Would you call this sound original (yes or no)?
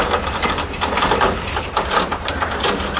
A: yes